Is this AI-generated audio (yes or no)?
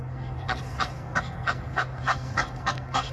yes